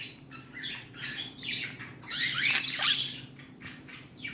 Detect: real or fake fake